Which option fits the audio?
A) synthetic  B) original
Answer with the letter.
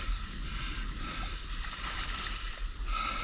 B